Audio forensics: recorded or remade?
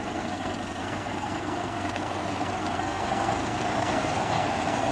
remade